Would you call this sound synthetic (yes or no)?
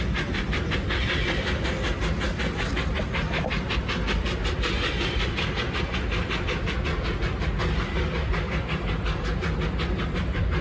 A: no